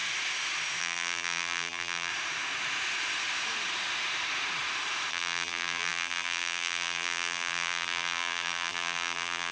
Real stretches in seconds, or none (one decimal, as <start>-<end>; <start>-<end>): 0.0-0.8; 2.1-5.1